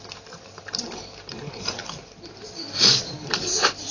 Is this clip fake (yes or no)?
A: yes